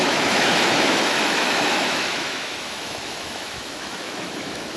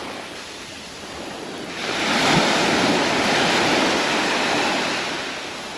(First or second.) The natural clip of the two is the second